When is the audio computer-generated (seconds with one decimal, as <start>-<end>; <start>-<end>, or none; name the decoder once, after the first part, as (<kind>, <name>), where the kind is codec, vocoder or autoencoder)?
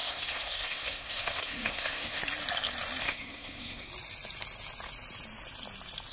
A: 0.0-2.2 (codec, SNAC); 3.0-3.9